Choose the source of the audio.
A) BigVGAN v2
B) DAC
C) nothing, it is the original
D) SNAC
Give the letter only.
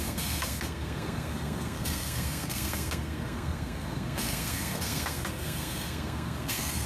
D